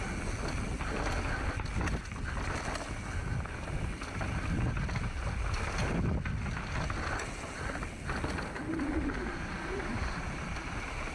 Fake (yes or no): no